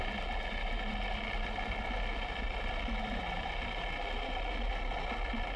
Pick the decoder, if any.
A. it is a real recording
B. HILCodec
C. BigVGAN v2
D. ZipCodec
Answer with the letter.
A